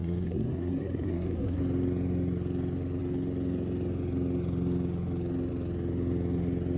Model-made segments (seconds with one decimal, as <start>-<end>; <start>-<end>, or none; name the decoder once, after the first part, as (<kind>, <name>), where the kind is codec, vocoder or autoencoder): 0.0-1.6 (codec, SNAC)